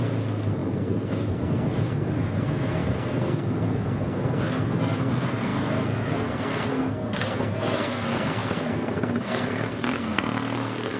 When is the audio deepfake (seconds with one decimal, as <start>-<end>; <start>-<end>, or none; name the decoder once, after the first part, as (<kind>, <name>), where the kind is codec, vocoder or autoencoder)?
0.0-11.0 (codec, SNAC)